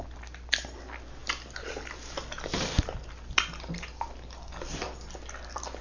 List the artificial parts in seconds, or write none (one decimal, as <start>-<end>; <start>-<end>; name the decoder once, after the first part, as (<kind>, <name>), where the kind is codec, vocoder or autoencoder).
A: none